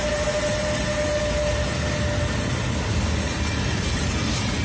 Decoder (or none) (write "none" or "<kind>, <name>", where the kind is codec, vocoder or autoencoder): none